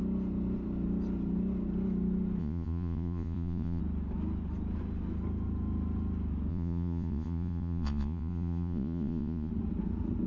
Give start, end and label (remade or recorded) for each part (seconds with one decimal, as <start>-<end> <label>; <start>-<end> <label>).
0.0-2.4 recorded; 2.4-3.8 remade; 3.8-6.5 recorded; 6.5-9.5 remade; 9.5-10.3 recorded